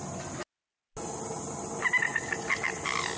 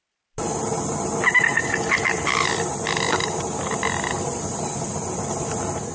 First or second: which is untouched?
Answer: first